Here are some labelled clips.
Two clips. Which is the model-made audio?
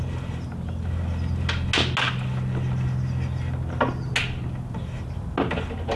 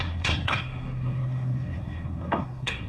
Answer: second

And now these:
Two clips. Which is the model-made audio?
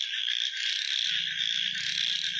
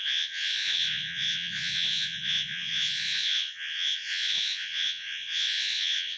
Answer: second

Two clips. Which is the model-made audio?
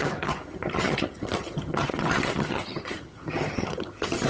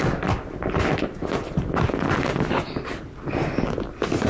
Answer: first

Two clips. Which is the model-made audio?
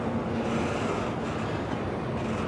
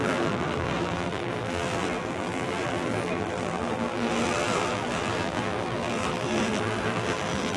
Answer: second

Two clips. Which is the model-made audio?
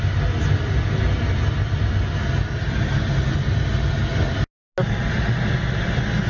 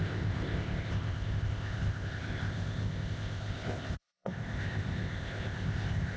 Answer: second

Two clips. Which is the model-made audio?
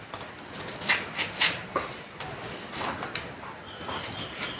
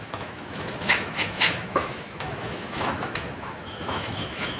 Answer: second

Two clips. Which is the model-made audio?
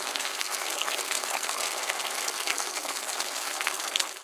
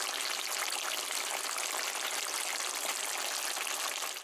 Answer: first